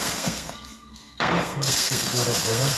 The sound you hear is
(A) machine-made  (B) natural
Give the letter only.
A